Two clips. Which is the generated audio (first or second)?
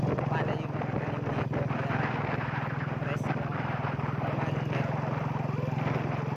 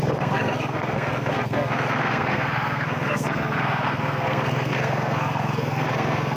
second